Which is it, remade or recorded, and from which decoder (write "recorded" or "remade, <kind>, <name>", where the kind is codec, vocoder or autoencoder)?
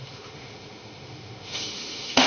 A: remade, autoencoder, DAC-VAE